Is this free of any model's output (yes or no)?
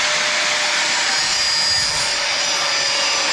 yes